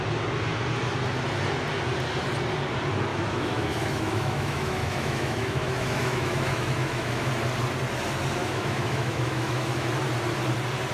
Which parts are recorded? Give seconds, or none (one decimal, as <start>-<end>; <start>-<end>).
0.0-3.1; 7.3-8.4; 9.9-10.9